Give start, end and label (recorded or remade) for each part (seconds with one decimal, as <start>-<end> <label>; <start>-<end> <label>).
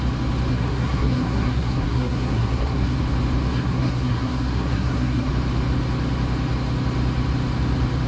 0.0-0.5 recorded; 0.5-3.0 remade; 3.0-3.5 recorded; 3.5-5.3 remade; 5.3-8.1 recorded